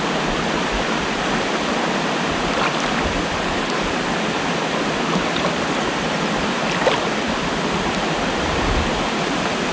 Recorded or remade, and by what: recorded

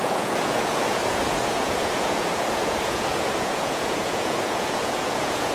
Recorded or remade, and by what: remade, vocoder, Vocos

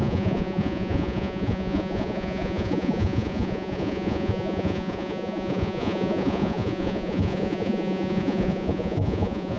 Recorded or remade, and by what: remade, vocoder, Vocos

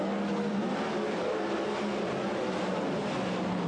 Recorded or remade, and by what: recorded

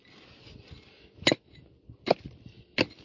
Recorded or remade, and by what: recorded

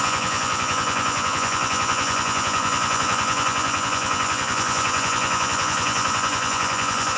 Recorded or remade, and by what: remade, vocoder, Vocos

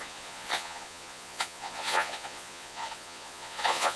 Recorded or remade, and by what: remade, vocoder, Vocos